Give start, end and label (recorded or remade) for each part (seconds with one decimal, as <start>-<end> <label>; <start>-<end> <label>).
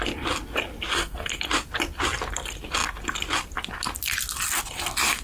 0.0-0.9 recorded; 0.9-1.4 remade; 1.4-5.2 recorded